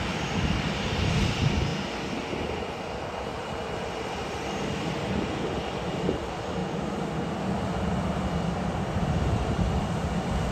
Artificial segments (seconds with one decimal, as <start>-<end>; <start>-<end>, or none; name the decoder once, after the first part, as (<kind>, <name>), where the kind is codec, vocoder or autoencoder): 0.0-1.7 (vocoder, BigVGAN v2); 3.9-6.6; 7.2-10.5